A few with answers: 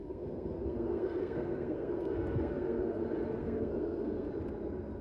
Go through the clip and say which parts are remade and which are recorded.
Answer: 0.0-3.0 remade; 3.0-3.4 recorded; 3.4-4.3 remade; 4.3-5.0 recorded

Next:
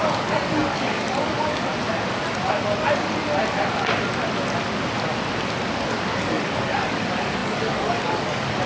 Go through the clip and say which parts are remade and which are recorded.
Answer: 0.0-1.7 remade; 1.7-6.2 recorded; 6.2-8.7 remade

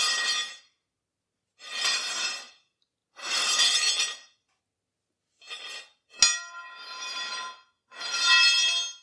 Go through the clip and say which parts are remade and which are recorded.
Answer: 0.0-9.0 recorded